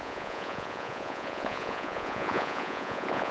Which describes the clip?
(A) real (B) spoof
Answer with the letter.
B